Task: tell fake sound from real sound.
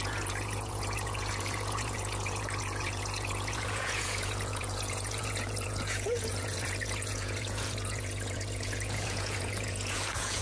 fake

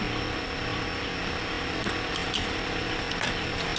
real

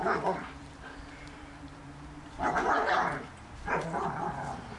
fake